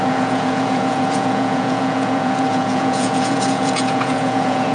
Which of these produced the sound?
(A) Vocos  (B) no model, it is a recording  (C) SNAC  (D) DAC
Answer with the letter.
A